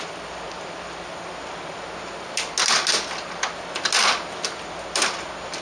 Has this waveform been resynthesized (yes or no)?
no